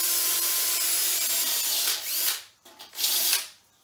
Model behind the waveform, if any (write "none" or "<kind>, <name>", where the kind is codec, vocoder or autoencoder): vocoder, BigVGAN v2